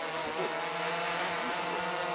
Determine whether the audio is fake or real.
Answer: real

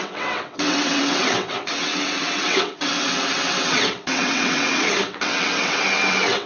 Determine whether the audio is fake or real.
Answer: fake